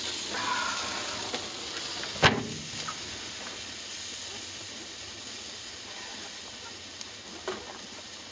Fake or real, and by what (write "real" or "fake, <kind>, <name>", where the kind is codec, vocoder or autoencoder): real